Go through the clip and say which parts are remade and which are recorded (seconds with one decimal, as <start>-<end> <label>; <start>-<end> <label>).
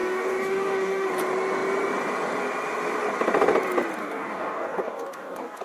0.0-1.1 remade; 1.1-4.0 recorded; 4.0-5.6 remade